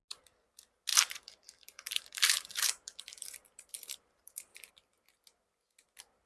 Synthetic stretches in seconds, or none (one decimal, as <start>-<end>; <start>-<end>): 0.9-4.7